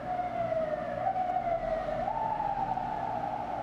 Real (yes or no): yes